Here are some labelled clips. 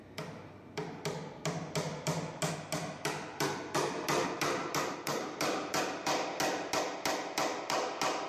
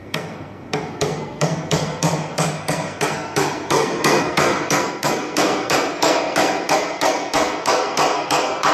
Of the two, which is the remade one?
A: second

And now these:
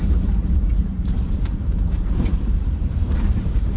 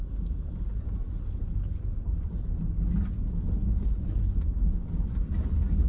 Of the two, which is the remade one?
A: first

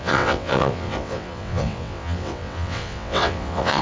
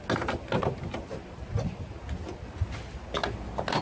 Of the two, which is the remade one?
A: first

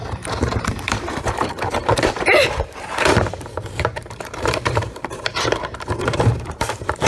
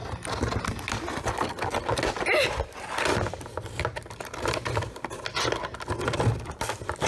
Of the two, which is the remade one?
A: first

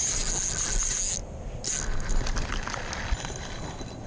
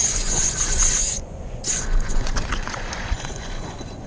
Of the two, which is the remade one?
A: second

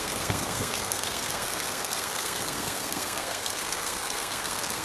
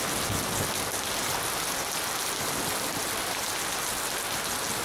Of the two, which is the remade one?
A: first